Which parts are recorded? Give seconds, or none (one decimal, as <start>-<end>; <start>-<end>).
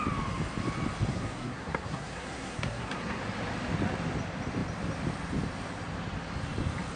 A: 0.0-1.1; 3.2-7.0